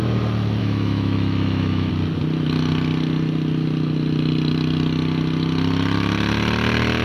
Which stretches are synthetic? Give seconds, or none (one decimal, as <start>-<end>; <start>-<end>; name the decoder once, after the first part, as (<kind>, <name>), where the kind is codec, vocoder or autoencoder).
0.6-1.9 (autoencoder, DAC-VAE)